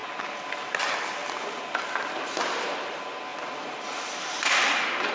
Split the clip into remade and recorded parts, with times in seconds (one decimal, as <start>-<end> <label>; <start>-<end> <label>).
0.0-5.1 recorded